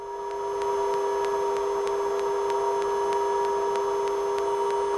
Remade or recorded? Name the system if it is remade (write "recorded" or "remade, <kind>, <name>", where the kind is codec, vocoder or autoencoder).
recorded